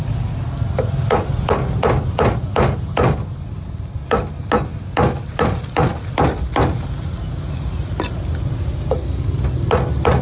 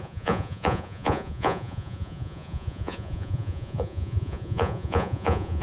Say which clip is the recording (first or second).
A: first